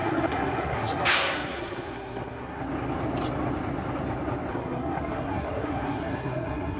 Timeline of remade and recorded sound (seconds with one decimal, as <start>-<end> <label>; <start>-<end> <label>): 0.0-2.6 remade; 2.6-4.5 recorded; 4.5-6.8 remade

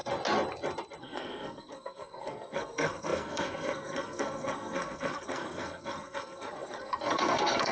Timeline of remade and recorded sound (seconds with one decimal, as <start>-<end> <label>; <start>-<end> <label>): 0.0-1.0 recorded; 1.0-7.7 remade

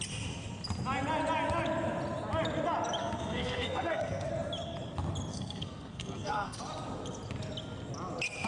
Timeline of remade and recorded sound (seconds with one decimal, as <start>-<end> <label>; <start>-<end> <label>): 0.0-3.0 recorded; 3.0-4.3 remade; 4.3-5.3 recorded; 5.3-6.6 remade; 6.6-8.5 recorded